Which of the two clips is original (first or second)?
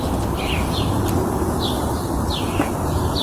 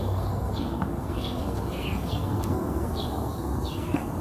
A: first